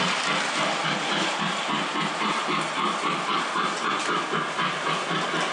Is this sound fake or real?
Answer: real